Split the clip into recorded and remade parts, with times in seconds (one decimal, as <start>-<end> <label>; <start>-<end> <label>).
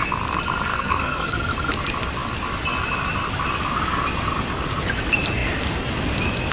0.0-0.7 recorded; 0.7-1.4 remade; 1.4-6.5 recorded